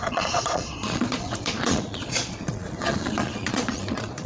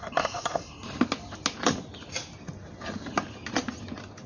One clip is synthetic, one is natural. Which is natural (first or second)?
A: second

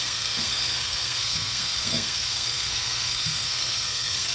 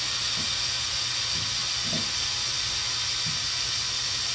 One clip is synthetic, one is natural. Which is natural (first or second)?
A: second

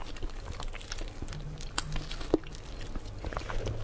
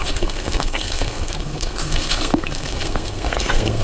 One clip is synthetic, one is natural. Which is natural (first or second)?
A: first